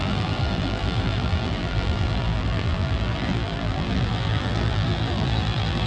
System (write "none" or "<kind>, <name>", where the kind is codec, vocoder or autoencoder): vocoder, BigVGAN v2